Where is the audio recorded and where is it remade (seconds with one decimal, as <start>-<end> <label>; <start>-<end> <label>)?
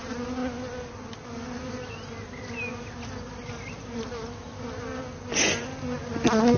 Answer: 0.0-6.6 recorded